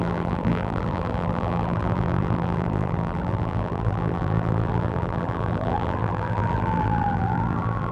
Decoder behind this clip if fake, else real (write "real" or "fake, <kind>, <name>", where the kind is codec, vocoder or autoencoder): fake, vocoder, BigVGAN v2